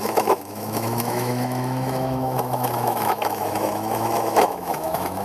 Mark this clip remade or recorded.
remade